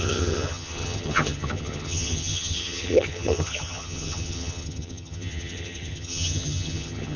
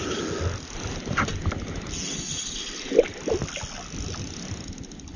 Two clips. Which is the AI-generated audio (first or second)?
first